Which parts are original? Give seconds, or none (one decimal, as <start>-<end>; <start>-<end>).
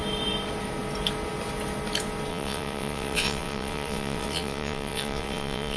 0.0-2.3